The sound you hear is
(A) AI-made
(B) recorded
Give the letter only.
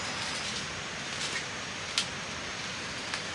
B